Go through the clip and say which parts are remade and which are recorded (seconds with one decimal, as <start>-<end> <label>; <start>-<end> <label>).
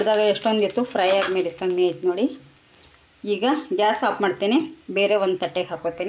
0.0-0.9 recorded; 0.9-2.9 remade; 2.9-4.9 recorded; 4.9-6.1 remade